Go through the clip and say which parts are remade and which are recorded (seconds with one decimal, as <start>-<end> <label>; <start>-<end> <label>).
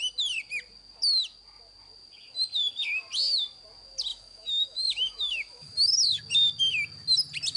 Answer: 0.0-4.1 recorded; 4.1-6.2 remade; 6.2-7.6 recorded